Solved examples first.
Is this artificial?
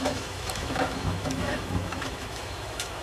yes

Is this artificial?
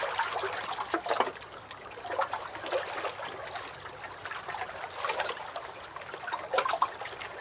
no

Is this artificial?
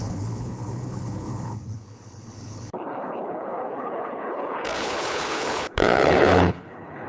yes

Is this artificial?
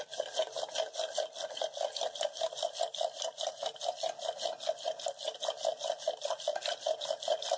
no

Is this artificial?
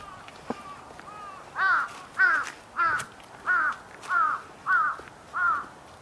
no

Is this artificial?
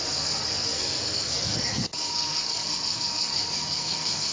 yes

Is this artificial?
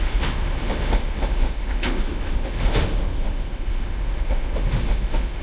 yes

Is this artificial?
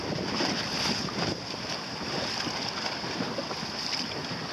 no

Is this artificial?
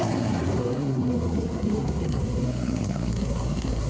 yes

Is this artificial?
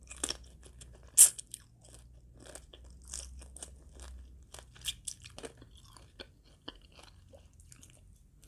no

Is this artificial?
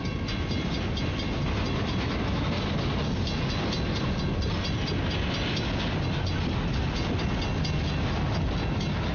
no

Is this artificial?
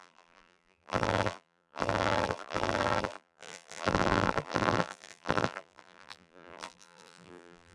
yes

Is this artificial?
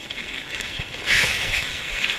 yes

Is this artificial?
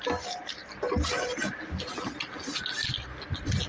no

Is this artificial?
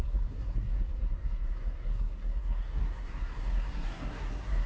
yes